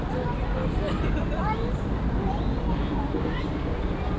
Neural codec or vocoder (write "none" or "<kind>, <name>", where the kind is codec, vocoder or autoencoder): none